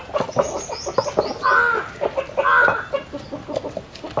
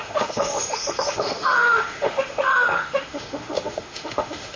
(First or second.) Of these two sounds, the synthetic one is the second